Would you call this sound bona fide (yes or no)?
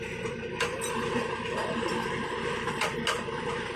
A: yes